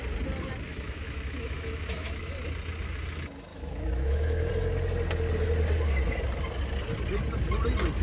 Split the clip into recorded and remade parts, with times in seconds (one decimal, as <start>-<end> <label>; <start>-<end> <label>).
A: 0.0-0.7 recorded; 0.7-2.3 remade; 2.3-3.5 recorded; 3.5-4.5 remade; 4.5-8.0 recorded